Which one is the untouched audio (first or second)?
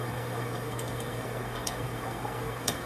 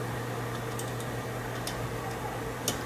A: second